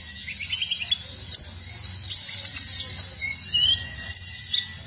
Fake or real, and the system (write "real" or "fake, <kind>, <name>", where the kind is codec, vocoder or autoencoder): real